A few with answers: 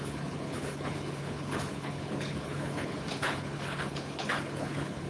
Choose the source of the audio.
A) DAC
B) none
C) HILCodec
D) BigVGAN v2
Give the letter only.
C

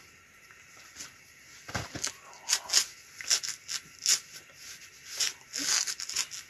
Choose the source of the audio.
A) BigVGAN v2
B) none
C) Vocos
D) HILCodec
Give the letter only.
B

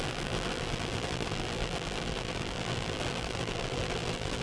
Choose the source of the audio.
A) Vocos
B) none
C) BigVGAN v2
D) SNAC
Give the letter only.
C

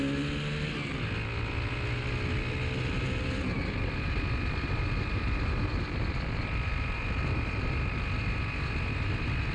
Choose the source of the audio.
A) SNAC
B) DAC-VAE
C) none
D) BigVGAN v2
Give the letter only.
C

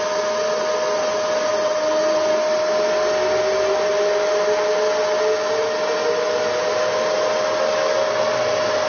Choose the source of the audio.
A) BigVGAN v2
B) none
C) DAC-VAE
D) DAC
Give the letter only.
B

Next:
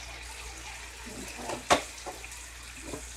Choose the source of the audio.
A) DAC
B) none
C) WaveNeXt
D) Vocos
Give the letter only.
B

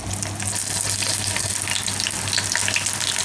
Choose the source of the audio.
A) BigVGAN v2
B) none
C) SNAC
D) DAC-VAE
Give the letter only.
B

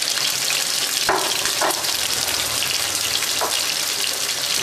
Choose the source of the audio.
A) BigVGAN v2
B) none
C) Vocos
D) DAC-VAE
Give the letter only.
A